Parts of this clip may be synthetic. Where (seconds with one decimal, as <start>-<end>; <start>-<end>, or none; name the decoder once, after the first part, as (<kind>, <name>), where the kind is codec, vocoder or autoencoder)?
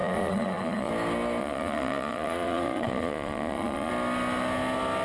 0.0-0.9 (vocoder, Vocos); 1.4-3.9